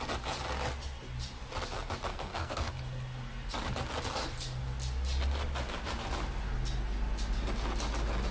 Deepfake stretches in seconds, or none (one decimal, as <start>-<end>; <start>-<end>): 2.1-2.7